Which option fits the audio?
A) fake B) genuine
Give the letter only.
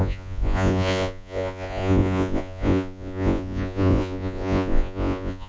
A